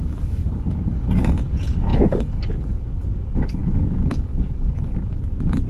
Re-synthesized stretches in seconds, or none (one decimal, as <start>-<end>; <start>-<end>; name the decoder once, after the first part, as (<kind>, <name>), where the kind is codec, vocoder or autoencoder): 0.0-5.7 (codec, DAC)